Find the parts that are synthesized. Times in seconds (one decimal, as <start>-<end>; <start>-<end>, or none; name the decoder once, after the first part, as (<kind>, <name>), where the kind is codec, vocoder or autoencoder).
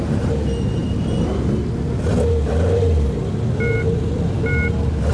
none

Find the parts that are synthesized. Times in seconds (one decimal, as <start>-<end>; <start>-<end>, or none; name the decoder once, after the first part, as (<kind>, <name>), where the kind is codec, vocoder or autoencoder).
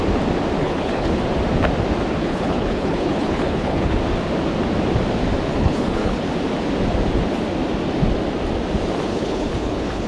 0.6-1.2 (codec, HILCodec); 2.2-4.0; 5.5-6.3; 9.1-10.1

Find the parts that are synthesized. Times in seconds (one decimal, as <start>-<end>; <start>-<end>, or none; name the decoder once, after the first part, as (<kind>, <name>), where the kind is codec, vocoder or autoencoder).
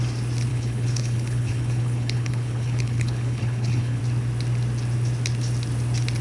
0.5-4.0 (codec, HILCodec)